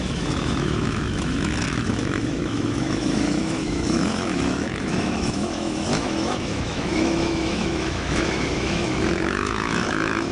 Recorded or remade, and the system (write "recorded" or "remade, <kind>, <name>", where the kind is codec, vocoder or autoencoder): remade, autoencoder, DAC-VAE